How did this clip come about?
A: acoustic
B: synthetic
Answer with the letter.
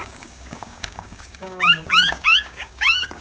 B